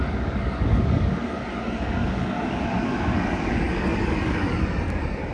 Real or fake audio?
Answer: fake